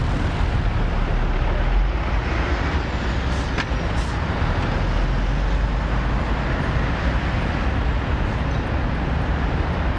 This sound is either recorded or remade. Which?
recorded